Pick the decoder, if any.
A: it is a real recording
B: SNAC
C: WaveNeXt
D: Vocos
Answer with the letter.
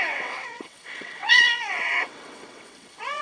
C